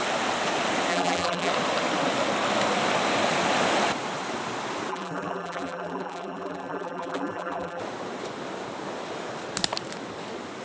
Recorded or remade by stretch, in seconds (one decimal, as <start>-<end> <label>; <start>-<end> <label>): 0.0-0.9 recorded; 0.9-1.5 remade; 1.5-4.9 recorded; 4.9-7.8 remade; 7.8-10.6 recorded